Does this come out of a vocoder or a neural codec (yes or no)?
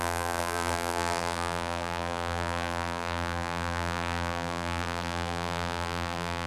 yes